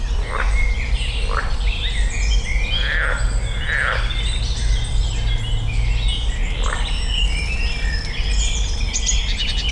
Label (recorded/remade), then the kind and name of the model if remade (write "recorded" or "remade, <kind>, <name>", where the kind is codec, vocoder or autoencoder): recorded